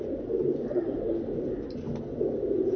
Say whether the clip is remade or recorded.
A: recorded